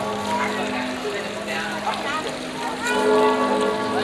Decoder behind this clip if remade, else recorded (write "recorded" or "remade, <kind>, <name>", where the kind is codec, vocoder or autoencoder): recorded